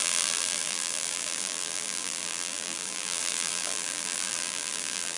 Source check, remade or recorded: remade